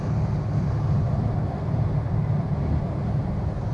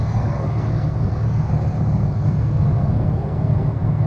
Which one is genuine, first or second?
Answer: first